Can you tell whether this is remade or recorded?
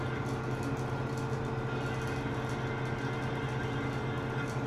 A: recorded